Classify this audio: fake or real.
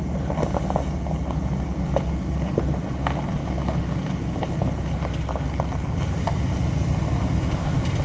real